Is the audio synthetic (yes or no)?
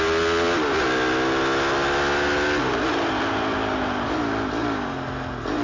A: no